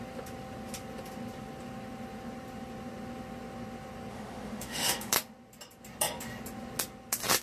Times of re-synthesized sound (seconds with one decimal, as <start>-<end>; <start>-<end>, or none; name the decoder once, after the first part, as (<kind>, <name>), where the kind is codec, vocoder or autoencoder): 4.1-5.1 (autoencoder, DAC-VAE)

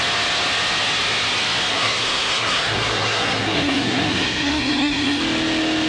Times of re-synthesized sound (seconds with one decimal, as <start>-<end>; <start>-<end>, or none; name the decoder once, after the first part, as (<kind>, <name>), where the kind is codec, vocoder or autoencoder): 1.7-5.2 (codec, SNAC)

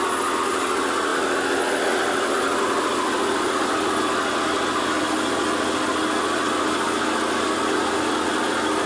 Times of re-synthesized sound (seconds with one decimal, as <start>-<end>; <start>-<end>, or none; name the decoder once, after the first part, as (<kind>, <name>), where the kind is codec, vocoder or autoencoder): none